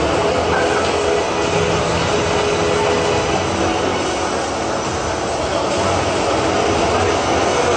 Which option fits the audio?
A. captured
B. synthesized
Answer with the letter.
A